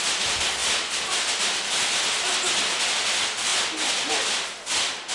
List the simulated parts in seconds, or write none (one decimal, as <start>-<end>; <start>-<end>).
none